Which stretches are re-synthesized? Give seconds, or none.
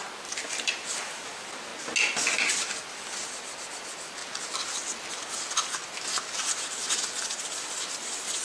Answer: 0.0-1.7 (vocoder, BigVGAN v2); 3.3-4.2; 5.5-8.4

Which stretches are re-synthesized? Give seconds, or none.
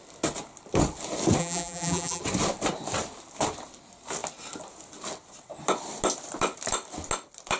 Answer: 1.4-2.2 (vocoder, BigVGAN v2)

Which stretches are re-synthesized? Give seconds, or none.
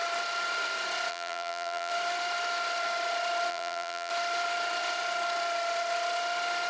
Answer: 1.1-1.9 (vocoder, BigVGAN v2); 3.5-4.1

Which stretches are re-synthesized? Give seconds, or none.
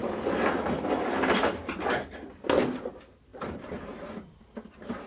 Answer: 3.3-4.4 (vocoder, BigVGAN v2)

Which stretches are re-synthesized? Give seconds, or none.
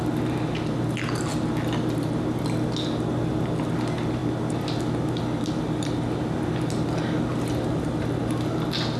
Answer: none